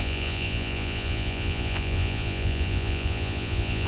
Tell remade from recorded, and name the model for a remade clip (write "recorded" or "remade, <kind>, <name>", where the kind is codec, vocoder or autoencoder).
remade, vocoder, Vocos